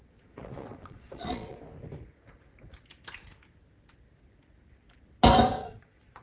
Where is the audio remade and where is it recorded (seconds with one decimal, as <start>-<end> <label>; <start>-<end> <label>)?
0.0-1.6 remade; 1.6-5.6 recorded; 5.6-6.2 remade

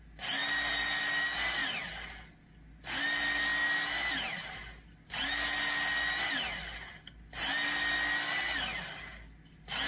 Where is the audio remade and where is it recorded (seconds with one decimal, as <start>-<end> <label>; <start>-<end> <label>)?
0.0-9.9 recorded

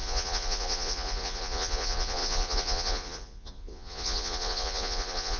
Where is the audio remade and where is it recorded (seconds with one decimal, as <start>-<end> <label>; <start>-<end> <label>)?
0.0-5.4 remade

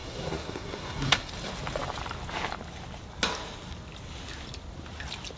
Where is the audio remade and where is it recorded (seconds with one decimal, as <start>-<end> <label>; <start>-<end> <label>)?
0.0-1.3 remade; 1.3-5.4 recorded

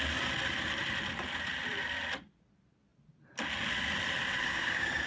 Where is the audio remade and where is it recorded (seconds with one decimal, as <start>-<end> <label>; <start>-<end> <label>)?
0.0-4.5 recorded; 4.5-5.1 remade

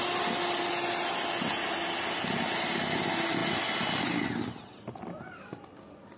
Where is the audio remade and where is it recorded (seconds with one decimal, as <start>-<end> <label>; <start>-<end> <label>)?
0.0-6.2 recorded